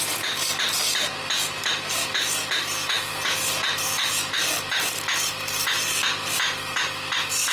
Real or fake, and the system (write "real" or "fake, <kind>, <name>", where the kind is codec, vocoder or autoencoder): real